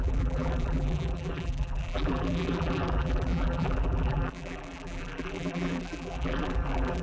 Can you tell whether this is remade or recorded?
remade